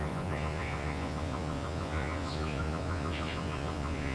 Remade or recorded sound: remade